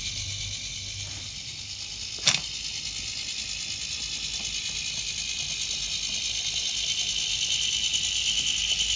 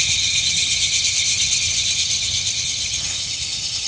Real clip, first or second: first